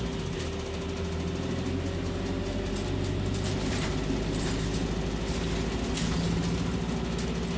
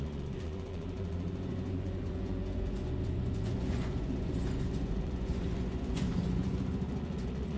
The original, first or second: first